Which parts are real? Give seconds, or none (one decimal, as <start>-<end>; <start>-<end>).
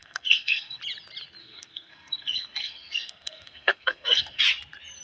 0.8-1.4; 4.4-5.0